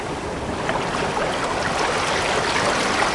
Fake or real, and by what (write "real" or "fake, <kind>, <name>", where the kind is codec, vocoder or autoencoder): real